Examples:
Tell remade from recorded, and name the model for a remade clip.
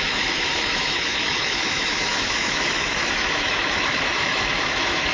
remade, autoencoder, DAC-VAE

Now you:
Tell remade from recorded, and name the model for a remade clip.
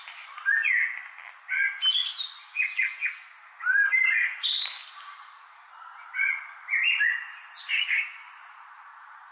recorded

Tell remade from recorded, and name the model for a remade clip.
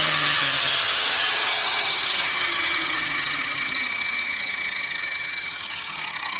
remade, vocoder, HiFi-GAN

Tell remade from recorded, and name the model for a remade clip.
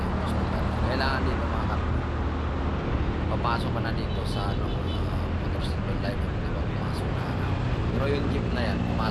recorded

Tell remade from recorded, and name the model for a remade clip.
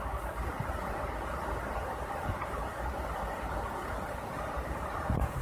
recorded